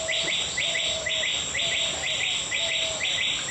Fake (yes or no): no